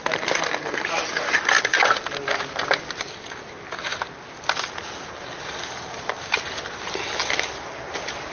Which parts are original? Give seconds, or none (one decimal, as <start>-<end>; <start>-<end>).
0.0-8.3